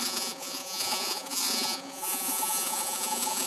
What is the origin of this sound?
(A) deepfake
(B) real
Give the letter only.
A